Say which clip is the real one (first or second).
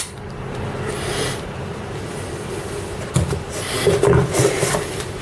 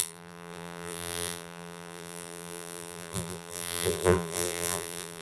first